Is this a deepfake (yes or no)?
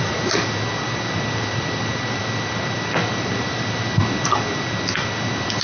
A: yes